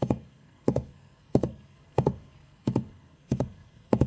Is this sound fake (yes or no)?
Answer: yes